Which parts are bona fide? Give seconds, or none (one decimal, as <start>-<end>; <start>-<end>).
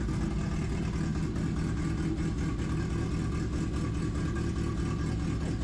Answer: 0.0-5.6